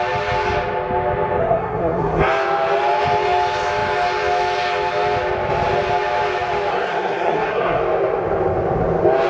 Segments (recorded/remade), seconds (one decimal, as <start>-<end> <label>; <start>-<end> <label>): 0.0-1.4 recorded; 1.4-2.2 remade; 2.2-6.7 recorded; 6.7-7.8 remade; 7.8-9.3 recorded